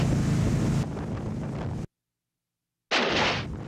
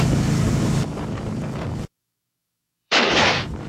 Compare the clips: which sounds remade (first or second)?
second